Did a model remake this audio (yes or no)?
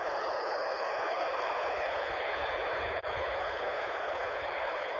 yes